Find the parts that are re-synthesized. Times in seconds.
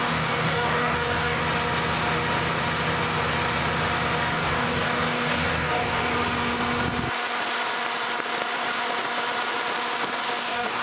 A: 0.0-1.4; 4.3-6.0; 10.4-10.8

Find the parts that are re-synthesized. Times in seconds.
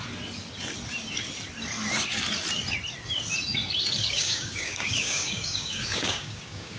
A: 4.1-6.8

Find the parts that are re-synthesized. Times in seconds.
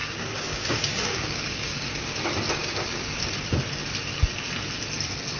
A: 0.0-2.2; 2.6-3.2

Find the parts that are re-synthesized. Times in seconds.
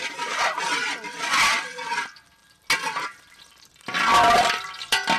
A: none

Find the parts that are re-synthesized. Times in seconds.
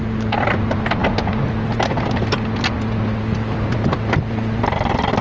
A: none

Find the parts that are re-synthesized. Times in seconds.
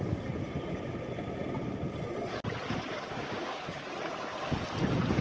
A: 2.9-3.8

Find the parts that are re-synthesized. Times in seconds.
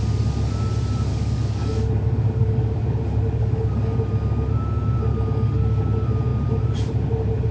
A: 1.1-2.8; 3.4-4.0; 5.1-5.8